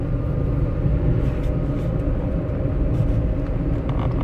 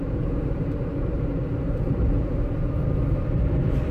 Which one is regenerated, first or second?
second